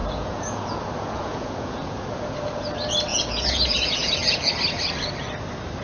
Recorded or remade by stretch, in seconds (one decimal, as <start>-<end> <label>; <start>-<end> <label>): 0.0-2.7 remade; 2.7-3.1 recorded; 3.1-4.5 remade; 4.5-5.8 recorded